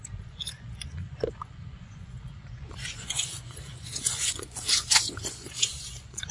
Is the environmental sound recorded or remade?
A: remade